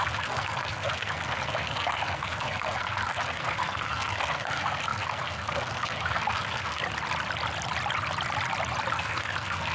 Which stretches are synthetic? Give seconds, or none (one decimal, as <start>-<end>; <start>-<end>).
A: 0.0-6.8; 8.9-9.7